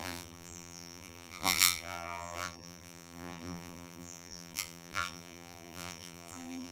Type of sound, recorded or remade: remade